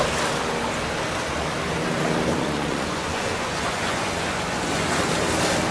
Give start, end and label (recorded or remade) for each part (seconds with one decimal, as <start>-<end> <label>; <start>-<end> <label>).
0.0-2.3 recorded; 2.3-5.1 remade; 5.1-5.7 recorded